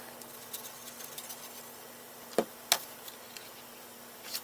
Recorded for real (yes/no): yes